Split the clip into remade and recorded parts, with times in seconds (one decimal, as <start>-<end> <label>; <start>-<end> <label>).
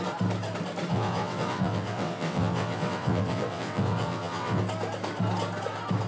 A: 0.0-0.9 recorded; 0.9-4.6 remade; 4.6-6.1 recorded